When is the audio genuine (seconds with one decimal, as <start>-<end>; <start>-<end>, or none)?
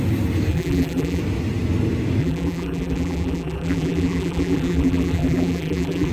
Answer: 0.0-0.5; 1.2-2.2